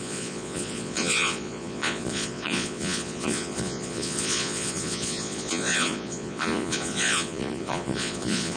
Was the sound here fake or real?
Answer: fake